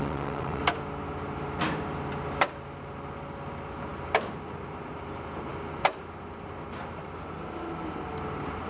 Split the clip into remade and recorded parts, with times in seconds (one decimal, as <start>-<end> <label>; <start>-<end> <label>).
0.0-0.6 remade; 0.6-8.7 recorded